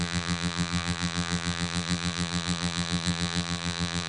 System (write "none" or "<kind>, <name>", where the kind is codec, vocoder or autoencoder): vocoder, BigVGAN v2